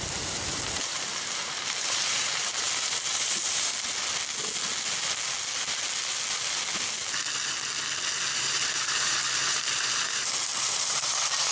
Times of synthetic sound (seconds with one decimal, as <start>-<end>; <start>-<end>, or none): 0.0-3.7; 8.3-11.5